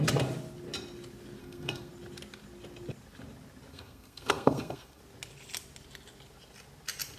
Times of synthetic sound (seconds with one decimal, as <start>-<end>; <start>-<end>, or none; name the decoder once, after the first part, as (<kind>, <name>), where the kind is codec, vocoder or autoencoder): 1.4-1.9 (codec, SNAC); 3.7-5.0